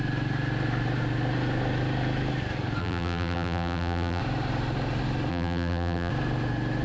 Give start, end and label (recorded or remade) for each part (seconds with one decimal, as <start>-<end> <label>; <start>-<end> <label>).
0.0-2.8 recorded; 2.8-4.2 remade; 4.2-5.3 recorded; 5.3-6.1 remade; 6.1-6.8 recorded